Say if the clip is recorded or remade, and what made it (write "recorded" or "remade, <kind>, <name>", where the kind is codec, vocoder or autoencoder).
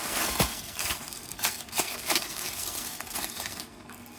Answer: remade, codec, SNAC